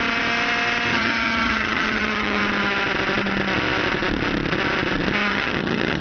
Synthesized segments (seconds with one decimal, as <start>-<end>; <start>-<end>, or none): 0.9-2.4; 5.3-6.0